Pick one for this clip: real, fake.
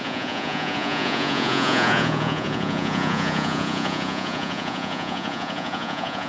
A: fake